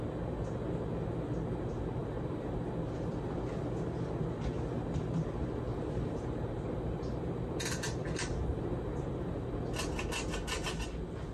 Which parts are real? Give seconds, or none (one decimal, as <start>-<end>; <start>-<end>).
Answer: 0.0-2.0; 2.6-5.7; 9.5-11.3